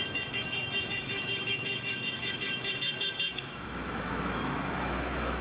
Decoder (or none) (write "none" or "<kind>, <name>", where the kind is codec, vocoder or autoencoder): autoencoder, DAC-VAE